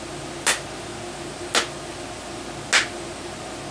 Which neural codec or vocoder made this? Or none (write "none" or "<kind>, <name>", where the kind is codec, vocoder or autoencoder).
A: none